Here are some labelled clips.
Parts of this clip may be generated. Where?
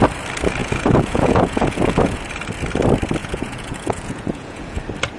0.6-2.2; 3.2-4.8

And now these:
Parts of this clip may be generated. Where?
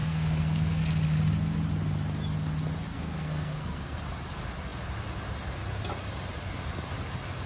0.0-0.8; 2.9-4.0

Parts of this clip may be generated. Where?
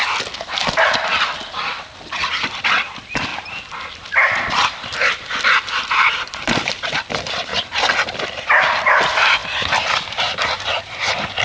0.9-3.3; 3.9-7.5; 8.2-9.4; 10.7-11.4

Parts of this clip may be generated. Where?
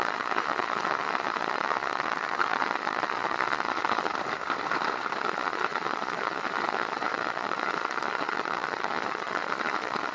0.0-4.1; 5.2-10.1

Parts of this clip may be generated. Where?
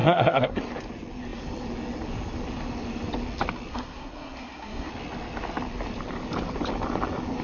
0.0-0.6; 3.7-4.9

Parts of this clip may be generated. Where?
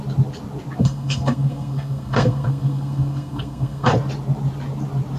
0.8-3.9